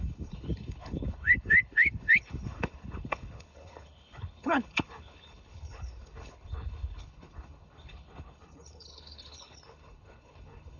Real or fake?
fake